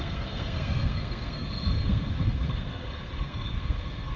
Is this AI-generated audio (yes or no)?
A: yes